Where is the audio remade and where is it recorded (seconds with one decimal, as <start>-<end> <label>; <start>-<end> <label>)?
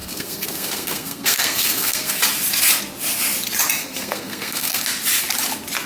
0.0-2.2 remade; 2.2-3.8 recorded; 3.8-4.8 remade; 4.8-5.9 recorded